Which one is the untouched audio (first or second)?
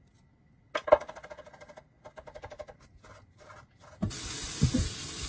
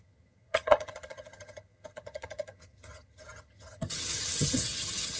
first